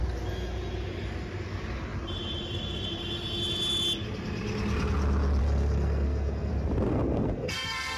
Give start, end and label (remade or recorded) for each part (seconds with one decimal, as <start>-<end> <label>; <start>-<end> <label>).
0.0-5.4 recorded; 5.4-6.5 remade; 6.5-6.9 recorded; 6.9-8.0 remade